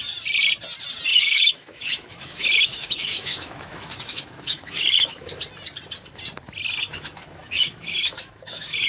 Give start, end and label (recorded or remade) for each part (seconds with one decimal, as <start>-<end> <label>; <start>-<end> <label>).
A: 0.0-1.1 recorded; 1.1-5.4 remade; 5.4-6.9 recorded; 6.9-8.9 remade